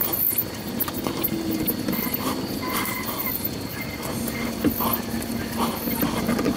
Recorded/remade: recorded